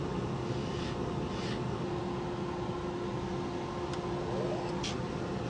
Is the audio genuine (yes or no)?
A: yes